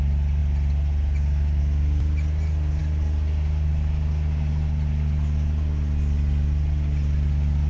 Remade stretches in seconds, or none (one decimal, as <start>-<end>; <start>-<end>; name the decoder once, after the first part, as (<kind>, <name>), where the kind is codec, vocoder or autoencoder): none